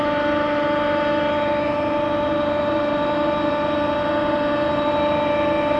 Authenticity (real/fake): real